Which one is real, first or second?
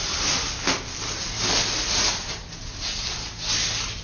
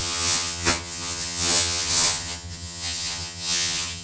first